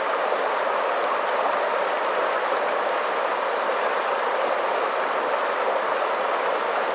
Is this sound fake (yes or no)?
no